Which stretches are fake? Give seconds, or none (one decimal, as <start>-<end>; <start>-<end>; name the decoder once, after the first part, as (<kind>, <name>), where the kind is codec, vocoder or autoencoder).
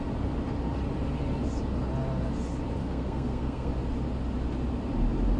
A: 2.8-3.7 (codec, SNAC)